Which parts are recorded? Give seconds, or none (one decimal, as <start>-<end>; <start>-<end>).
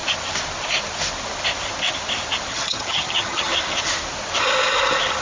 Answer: 0.0-2.5; 3.5-5.2